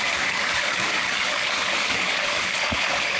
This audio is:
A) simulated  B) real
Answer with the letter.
A